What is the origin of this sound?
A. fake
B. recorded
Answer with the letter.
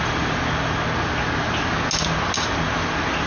B